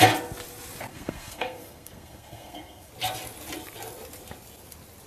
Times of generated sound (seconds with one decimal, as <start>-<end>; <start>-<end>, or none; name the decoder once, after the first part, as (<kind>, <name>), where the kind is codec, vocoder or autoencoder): 0.9-2.9 (codec, SNAC)